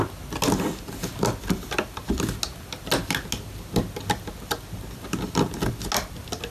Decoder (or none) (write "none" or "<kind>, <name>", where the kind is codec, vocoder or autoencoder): none